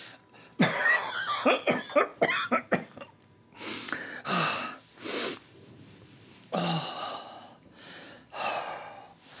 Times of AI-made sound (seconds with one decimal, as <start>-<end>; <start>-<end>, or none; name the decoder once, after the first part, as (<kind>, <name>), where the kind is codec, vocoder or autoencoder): 2.1-3.5 (vocoder, BigVGAN v2); 5.3-8.3